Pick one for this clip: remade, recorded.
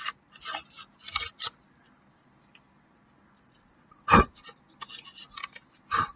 recorded